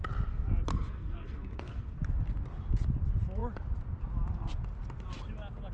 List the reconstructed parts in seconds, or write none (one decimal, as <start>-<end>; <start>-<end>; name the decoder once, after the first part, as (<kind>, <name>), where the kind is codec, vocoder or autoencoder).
0.7-2.0 (codec, SNAC)